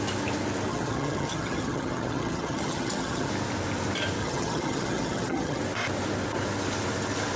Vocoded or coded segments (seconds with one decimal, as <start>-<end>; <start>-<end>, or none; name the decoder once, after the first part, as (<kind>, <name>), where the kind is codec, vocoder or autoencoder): 0.7-3.3 (vocoder, HiFi-GAN); 4.2-5.6